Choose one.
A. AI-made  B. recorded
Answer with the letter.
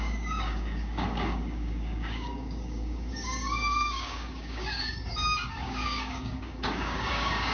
A